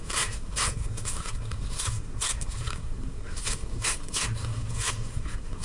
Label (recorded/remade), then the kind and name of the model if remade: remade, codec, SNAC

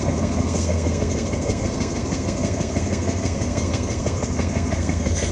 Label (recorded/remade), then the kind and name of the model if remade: remade, codec, SNAC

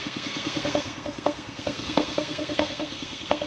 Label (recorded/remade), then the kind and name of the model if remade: remade, codec, SNAC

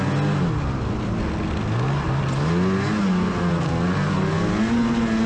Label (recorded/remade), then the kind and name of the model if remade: recorded